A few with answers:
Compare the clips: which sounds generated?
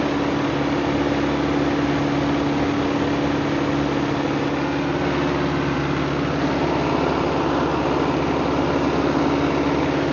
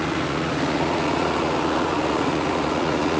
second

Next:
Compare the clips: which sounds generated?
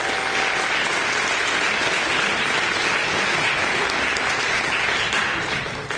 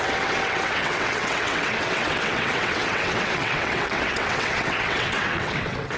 second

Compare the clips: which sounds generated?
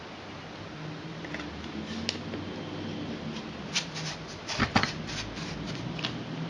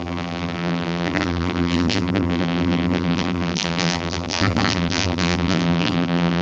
second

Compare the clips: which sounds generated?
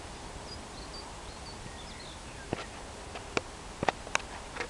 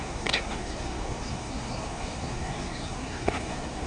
second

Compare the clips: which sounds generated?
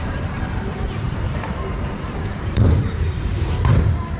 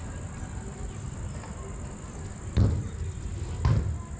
first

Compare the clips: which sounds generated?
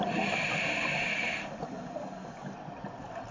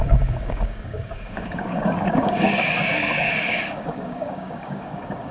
second